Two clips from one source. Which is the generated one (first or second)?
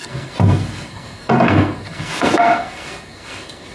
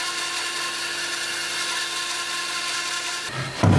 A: first